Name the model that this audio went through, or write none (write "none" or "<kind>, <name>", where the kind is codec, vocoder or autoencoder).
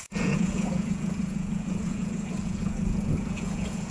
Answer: vocoder, Vocos